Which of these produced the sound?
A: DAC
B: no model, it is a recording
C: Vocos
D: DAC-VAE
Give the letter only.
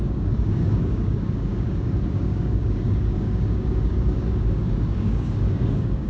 A